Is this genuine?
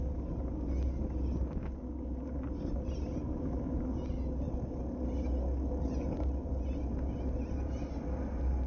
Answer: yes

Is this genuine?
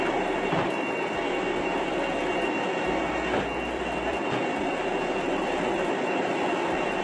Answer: no